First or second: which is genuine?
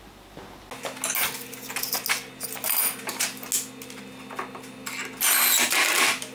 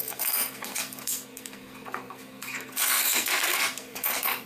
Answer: first